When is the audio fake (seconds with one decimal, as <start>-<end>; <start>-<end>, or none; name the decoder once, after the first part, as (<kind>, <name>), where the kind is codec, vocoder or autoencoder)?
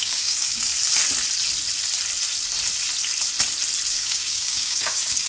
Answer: 0.0-0.7 (codec, DAC); 3.9-5.3